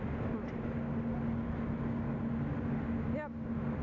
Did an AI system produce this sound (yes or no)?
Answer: no